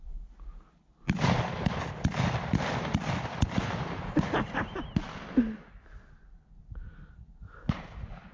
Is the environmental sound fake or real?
real